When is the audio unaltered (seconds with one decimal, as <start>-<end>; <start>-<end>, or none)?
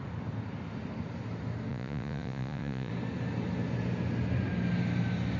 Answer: 0.0-1.7; 2.9-5.4